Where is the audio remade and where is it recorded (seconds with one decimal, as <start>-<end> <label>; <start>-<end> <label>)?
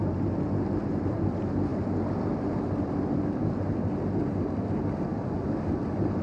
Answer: 0.0-6.2 recorded